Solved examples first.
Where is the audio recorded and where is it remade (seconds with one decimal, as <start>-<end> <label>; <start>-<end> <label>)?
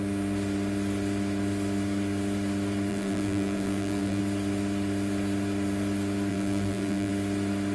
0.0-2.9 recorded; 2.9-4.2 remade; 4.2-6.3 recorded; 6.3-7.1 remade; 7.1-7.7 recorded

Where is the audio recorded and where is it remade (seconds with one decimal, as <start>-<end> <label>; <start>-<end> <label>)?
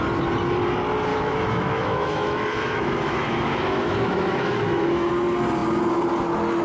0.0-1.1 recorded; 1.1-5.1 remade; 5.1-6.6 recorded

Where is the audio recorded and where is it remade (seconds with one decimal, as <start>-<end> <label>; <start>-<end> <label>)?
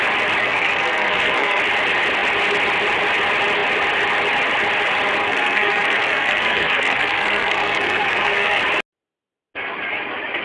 0.0-0.4 recorded; 0.4-1.6 remade; 1.6-5.2 recorded; 5.2-8.6 remade; 8.6-10.4 recorded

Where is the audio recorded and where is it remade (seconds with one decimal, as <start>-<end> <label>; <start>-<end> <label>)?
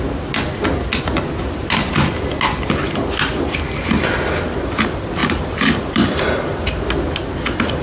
0.0-5.2 recorded; 5.2-7.1 remade; 7.1-7.8 recorded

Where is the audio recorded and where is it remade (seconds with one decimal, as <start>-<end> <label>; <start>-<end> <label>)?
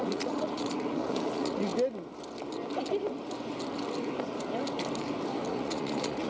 0.0-1.7 remade; 1.7-5.5 recorded; 5.5-6.3 remade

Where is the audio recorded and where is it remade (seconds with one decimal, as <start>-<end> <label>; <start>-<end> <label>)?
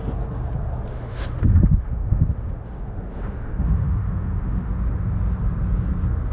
0.0-0.9 recorded; 0.9-4.7 remade; 4.7-6.3 recorded